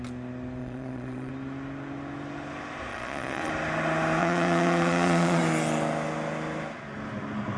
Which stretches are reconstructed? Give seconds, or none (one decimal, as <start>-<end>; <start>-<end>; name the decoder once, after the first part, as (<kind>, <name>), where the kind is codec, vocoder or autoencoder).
0.6-1.3 (vocoder, Vocos); 2.9-3.5; 4.2-5.4